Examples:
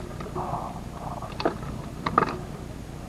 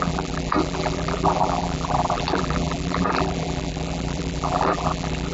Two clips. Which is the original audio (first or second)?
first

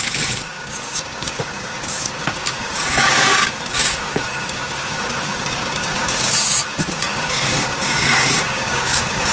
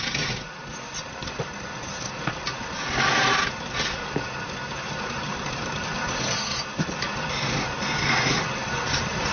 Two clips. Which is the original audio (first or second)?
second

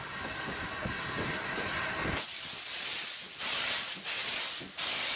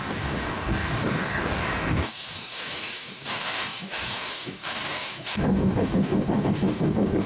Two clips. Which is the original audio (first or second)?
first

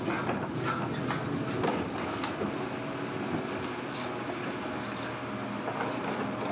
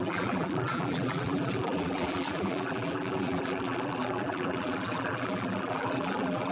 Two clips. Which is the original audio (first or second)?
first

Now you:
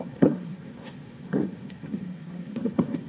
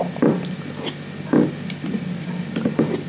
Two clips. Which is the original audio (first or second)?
second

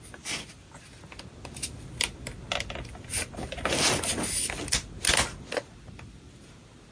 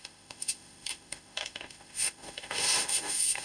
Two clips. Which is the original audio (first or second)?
first